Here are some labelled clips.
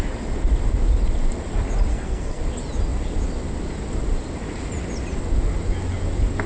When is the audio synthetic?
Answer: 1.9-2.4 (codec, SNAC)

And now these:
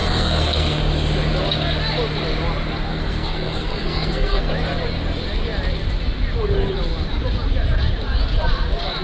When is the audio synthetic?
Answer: 0.0-0.8 (codec, SNAC); 2.9-4.5

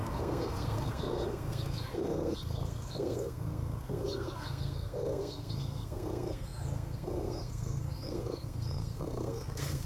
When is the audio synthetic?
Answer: 0.0-9.9 (codec, SNAC)

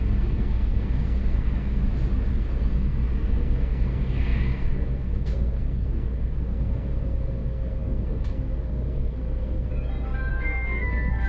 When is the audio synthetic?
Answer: 0.0-1.8 (codec, SNAC); 2.3-9.7; 10.3-11.3